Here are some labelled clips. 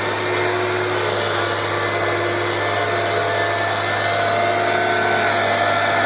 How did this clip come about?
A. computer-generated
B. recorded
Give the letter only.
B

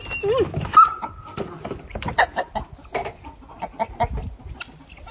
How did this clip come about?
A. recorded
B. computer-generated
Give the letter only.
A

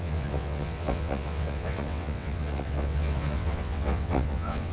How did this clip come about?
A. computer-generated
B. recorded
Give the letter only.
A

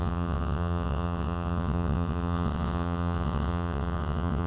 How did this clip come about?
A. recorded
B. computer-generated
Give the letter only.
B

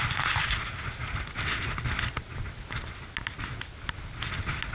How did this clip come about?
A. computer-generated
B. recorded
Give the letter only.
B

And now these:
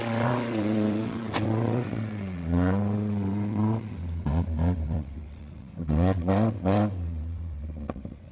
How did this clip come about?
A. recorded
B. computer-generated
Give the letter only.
B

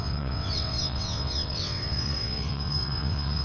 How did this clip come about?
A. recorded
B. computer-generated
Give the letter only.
B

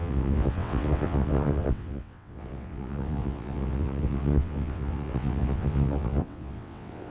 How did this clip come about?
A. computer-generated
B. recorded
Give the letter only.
A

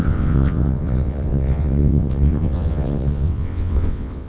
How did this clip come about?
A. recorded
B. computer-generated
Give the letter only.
B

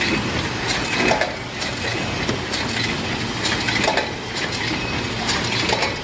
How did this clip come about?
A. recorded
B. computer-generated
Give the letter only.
A